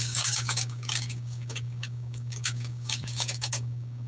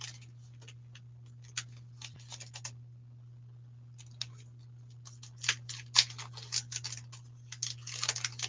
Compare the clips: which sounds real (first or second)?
second